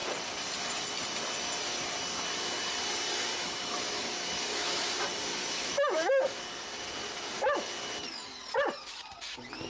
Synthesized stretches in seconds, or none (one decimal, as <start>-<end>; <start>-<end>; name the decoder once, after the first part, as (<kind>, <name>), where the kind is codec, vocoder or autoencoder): 3.4-4.8 (autoencoder, DAC-VAE); 5.4-6.1